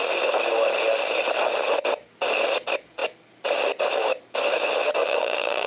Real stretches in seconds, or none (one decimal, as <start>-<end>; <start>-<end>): 0.0-5.0